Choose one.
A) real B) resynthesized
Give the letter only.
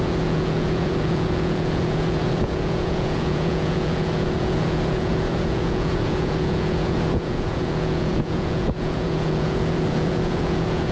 B